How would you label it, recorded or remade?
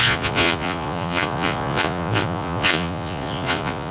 remade